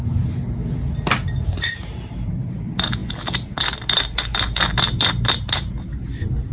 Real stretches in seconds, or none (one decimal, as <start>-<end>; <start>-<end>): 0.0-6.5

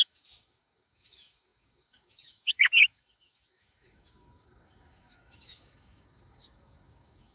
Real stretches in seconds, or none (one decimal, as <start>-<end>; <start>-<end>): none

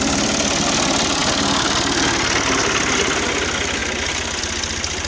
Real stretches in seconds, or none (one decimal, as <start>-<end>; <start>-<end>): 0.0-5.1

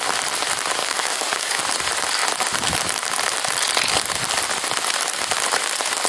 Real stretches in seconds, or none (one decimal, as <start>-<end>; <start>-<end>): 0.0-0.8; 1.6-6.1

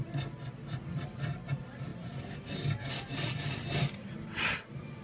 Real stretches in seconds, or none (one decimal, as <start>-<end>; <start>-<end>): 0.0-5.0